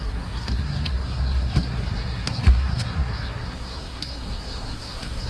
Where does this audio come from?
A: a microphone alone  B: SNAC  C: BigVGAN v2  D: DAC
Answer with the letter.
B